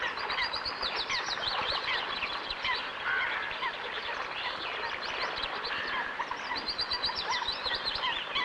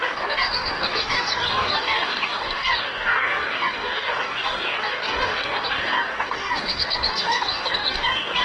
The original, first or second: first